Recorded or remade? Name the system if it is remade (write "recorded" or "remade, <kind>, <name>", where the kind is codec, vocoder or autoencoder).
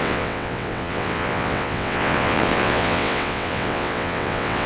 remade, vocoder, WaveNeXt